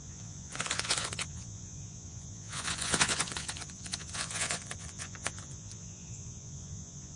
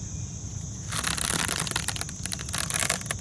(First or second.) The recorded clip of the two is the second